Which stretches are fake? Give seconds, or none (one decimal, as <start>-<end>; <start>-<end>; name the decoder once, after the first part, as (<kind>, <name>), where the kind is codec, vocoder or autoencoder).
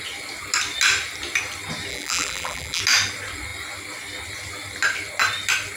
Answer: 1.9-2.8 (vocoder, BigVGAN v2)